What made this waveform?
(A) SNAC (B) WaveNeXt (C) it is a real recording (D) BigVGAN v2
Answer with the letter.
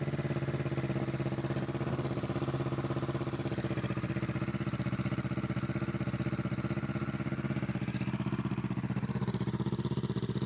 C